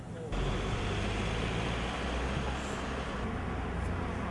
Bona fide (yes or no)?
yes